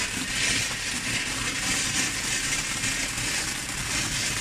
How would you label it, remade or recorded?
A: recorded